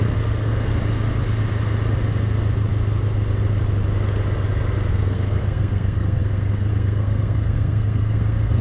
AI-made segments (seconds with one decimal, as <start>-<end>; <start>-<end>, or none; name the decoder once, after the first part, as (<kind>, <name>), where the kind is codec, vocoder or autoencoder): 0.0-0.7 (codec, SNAC); 4.9-8.6